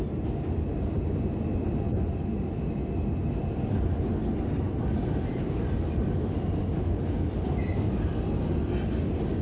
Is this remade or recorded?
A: recorded